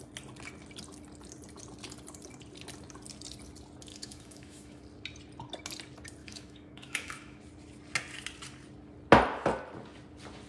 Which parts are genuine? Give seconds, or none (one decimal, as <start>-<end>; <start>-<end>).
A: 0.0-3.9; 4.8-6.2; 7.4-10.5